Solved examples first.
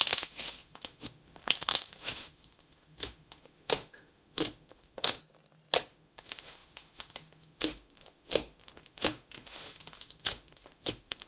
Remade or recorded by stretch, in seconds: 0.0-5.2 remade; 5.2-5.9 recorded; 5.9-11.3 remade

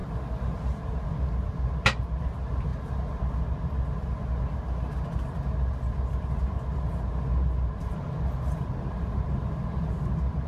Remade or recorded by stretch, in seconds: 0.0-10.5 recorded

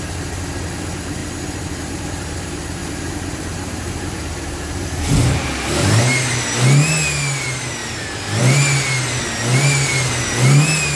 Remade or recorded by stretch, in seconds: 0.0-1.2 recorded; 1.2-2.0 remade; 2.0-2.8 recorded; 2.8-6.0 remade; 6.0-11.0 recorded

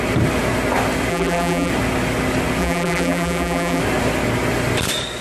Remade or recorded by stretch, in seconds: 0.0-1.1 recorded; 1.1-1.7 remade; 1.7-2.6 recorded; 2.6-3.8 remade; 3.8-5.2 recorded